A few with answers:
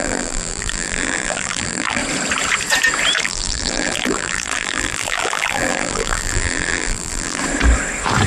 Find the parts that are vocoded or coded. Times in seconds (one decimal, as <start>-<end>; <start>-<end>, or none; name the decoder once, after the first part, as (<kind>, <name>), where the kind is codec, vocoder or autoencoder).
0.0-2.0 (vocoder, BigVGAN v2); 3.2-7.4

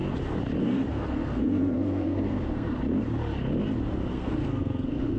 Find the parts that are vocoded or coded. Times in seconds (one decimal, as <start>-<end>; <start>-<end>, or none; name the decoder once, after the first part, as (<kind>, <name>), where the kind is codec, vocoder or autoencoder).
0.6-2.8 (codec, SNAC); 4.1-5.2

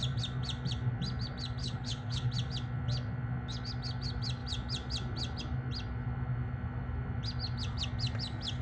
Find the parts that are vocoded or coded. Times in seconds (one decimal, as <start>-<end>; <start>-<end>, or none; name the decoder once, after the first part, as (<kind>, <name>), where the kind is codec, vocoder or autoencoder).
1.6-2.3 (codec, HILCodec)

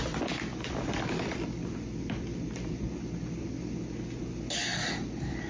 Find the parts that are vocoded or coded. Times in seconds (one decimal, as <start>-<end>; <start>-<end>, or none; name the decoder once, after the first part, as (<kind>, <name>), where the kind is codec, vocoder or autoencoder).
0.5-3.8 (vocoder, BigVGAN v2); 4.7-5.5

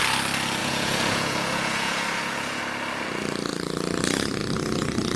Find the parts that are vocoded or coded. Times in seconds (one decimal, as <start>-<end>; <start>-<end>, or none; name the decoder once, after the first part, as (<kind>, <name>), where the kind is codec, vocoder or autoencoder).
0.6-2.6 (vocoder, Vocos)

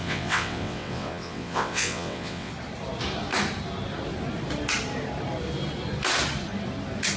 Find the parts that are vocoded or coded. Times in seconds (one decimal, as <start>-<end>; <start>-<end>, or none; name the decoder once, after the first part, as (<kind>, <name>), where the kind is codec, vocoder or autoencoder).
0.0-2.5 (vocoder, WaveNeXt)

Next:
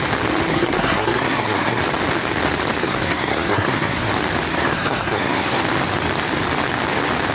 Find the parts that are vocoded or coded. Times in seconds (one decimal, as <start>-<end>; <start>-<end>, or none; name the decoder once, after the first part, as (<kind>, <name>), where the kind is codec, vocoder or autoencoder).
0.5-1.8 (codec, SNAC); 2.8-4.1; 4.5-5.6